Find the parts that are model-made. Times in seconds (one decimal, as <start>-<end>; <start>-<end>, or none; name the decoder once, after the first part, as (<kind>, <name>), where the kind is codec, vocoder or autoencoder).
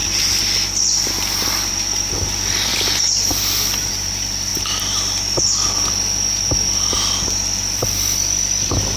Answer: 0.0-4.5 (vocoder, BigVGAN v2); 7.8-9.0